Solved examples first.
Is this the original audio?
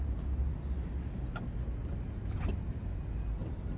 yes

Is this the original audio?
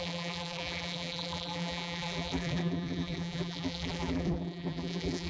no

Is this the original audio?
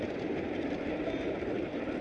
no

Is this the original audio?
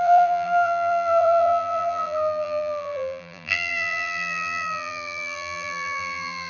no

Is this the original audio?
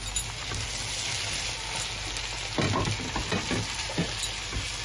yes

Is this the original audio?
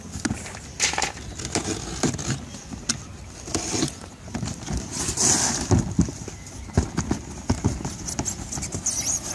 yes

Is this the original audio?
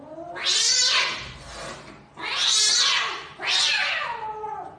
yes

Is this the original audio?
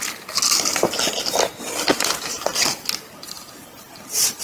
yes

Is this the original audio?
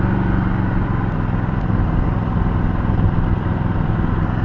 no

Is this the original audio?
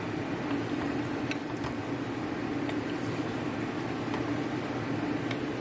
yes